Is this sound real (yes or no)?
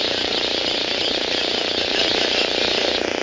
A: yes